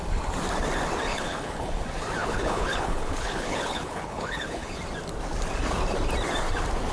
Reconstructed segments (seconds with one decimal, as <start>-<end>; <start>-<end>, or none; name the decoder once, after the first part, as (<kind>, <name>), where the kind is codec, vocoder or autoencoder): 1.1-1.8 (codec, HILCodec); 2.2-4.8